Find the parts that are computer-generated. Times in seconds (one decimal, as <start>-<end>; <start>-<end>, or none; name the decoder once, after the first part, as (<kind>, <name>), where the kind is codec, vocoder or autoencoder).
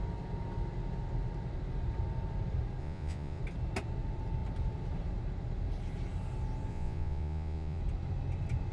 2.8-3.4 (vocoder, Vocos); 6.7-7.8